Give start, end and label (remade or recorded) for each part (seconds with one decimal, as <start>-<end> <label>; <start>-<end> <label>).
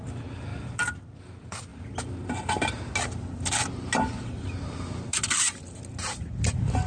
0.0-0.5 recorded; 0.5-1.0 remade; 1.0-6.9 recorded